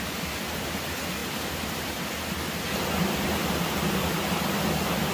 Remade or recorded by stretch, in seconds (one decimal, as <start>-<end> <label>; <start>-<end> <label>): 0.0-5.1 recorded